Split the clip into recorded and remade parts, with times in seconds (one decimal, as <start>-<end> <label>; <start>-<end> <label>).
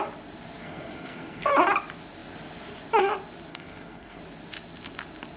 0.0-0.6 recorded; 0.6-1.5 remade; 1.5-3.5 recorded; 3.5-4.2 remade; 4.2-5.4 recorded